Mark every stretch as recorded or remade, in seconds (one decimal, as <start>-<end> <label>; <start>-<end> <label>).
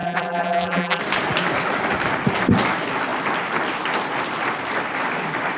0.0-1.0 remade; 1.0-5.6 recorded